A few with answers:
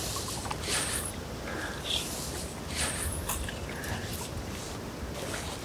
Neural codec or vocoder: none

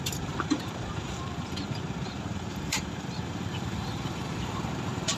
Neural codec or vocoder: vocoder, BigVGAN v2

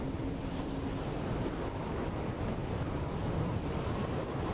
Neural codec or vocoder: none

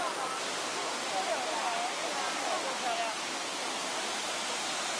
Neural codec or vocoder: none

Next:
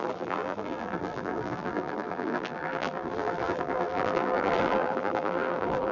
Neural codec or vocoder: vocoder, BigVGAN v2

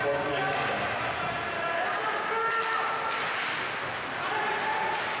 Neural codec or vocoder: none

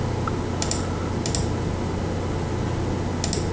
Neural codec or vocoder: none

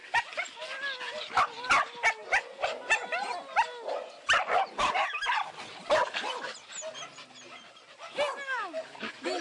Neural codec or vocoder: none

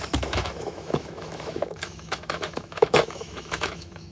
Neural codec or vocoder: autoencoder, DAC-VAE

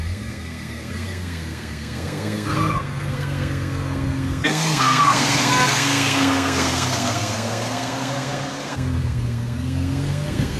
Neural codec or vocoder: codec, SNAC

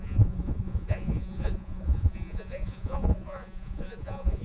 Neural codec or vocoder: vocoder, Vocos